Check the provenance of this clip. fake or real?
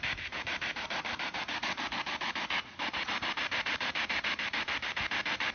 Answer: fake